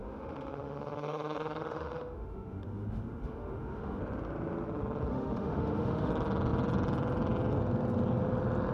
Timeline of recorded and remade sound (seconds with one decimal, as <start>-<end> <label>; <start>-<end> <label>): 0.0-4.0 remade; 4.0-5.1 recorded; 5.1-6.1 remade; 6.1-8.7 recorded